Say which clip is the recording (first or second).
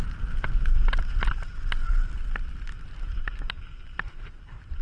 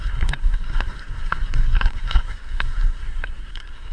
first